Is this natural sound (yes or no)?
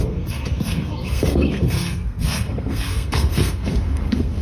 no